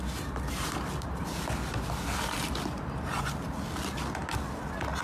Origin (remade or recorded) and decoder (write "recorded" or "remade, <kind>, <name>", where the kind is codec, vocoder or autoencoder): recorded